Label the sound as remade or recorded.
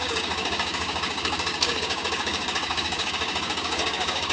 remade